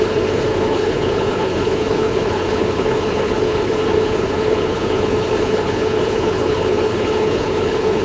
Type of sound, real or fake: fake